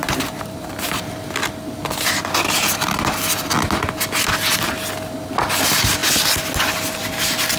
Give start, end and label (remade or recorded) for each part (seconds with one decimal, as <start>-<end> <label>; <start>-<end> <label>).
0.0-0.8 remade; 0.8-7.6 recorded

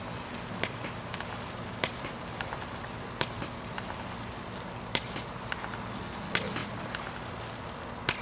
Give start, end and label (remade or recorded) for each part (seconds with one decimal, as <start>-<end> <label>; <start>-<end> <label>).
0.0-8.2 recorded

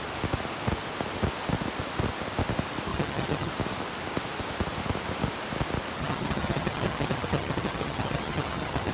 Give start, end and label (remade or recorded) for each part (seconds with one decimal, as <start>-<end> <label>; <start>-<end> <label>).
0.0-2.9 recorded; 2.9-3.5 remade; 3.5-6.0 recorded; 6.0-8.9 remade

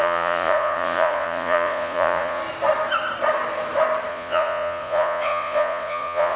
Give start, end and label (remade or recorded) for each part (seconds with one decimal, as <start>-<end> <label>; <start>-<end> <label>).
0.0-2.4 remade; 2.4-4.1 recorded; 4.1-6.4 remade

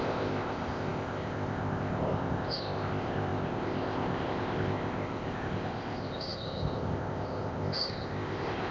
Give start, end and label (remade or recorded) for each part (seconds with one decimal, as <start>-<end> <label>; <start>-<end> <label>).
0.0-8.7 remade

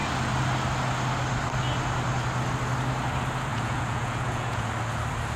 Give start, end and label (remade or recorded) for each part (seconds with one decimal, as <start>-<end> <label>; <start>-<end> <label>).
0.0-3.5 recorded; 3.5-4.7 remade; 4.7-5.4 recorded

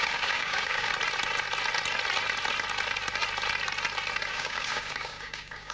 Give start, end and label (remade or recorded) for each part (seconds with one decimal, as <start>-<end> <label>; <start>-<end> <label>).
0.0-0.9 remade; 0.9-4.3 recorded; 4.3-5.7 remade